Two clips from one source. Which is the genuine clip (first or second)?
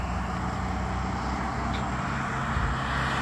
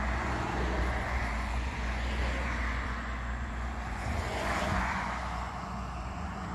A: first